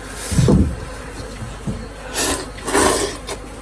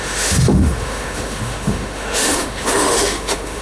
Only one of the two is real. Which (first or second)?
first